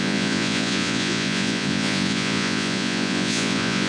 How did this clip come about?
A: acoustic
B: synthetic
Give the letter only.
B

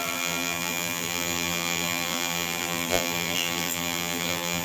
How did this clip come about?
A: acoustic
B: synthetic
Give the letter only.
B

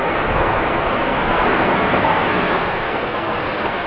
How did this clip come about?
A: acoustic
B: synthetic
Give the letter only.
B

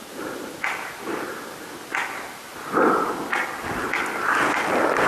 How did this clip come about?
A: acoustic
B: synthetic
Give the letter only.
A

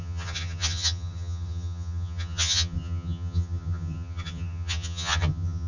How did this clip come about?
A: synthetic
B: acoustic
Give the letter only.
A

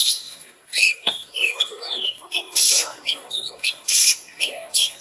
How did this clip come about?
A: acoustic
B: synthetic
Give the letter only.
B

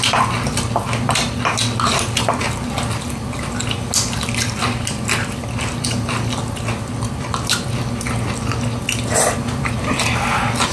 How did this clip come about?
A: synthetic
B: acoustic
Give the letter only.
B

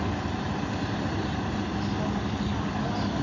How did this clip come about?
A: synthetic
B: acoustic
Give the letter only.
B